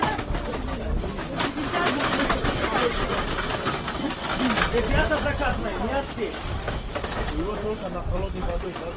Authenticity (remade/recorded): recorded